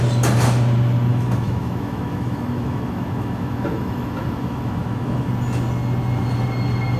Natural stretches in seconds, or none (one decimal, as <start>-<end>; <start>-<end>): 0.0-1.1; 5.3-7.0